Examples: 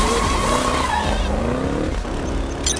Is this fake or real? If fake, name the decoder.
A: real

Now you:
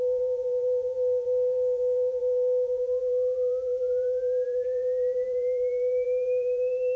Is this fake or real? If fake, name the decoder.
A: fake, vocoder, BigVGAN v2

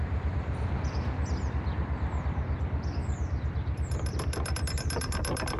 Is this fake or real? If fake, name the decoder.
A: real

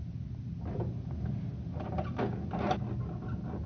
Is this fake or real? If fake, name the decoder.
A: real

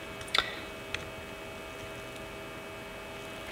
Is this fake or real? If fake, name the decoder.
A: real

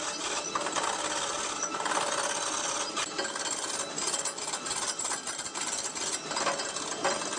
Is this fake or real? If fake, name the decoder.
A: real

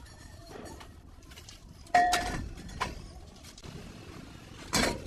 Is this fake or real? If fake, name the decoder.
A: fake, vocoder, BigVGAN v2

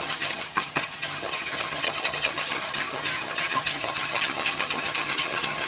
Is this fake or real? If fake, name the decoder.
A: fake, vocoder, HiFi-GAN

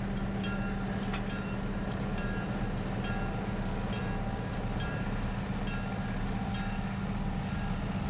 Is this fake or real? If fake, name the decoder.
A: real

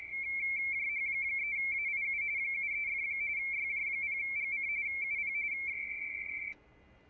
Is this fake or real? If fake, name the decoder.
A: real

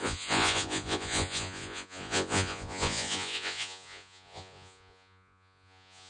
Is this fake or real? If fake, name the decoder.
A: fake, vocoder, Vocos